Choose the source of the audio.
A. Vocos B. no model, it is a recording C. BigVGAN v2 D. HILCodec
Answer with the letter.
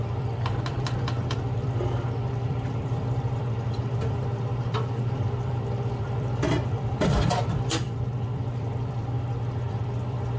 C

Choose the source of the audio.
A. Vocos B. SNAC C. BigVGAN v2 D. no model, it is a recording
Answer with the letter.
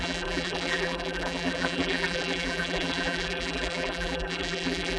C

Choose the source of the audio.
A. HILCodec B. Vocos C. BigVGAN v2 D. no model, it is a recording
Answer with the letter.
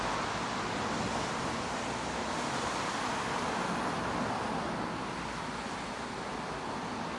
D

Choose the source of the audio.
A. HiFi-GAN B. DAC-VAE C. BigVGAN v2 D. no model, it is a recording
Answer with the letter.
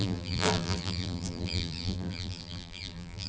C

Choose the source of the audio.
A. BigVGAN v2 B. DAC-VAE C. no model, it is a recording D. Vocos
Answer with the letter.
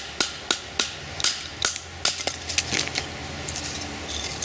C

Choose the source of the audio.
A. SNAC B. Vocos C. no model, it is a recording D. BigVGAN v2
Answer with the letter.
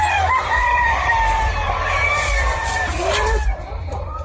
D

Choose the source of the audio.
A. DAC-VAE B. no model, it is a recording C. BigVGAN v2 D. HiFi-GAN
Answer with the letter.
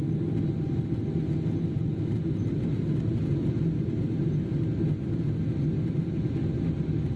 B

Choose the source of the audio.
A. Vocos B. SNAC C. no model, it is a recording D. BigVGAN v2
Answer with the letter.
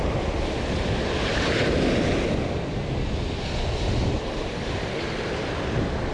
C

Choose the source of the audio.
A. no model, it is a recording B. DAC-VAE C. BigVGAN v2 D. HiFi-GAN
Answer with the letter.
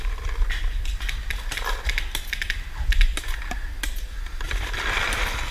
A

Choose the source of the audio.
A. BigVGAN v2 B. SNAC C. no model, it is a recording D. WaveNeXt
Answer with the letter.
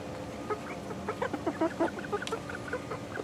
C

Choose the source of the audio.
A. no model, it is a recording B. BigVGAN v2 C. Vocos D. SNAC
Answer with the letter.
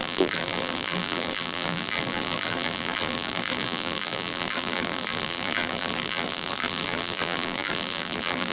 B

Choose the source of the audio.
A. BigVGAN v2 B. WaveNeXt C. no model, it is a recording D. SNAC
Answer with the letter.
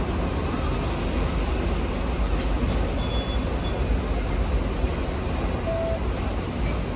C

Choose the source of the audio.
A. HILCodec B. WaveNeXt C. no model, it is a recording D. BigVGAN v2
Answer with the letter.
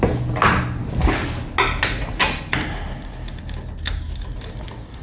C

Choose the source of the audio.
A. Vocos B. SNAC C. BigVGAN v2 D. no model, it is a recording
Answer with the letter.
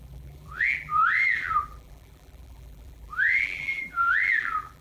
C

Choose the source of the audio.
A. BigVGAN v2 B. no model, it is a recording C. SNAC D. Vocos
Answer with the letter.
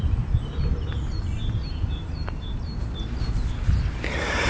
B